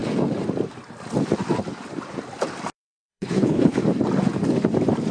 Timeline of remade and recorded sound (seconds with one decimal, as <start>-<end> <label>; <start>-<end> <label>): 0.0-3.1 recorded; 3.1-3.8 remade; 3.8-5.1 recorded